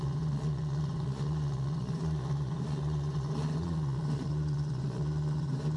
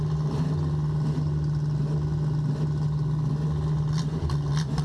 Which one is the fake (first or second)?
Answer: first